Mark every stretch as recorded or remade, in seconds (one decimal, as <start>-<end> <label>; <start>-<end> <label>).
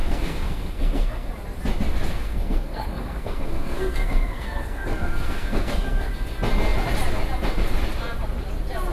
0.0-1.3 remade; 1.3-2.1 recorded; 2.1-6.1 remade; 6.1-8.9 recorded